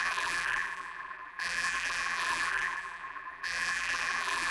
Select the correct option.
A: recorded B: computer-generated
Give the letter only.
B